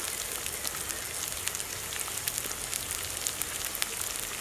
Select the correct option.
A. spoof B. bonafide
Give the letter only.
B